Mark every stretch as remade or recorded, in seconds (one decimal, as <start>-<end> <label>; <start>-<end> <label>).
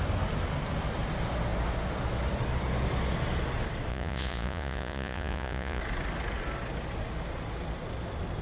0.0-3.9 recorded; 3.9-5.8 remade; 5.8-8.4 recorded